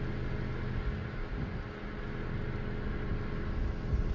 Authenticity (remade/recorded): recorded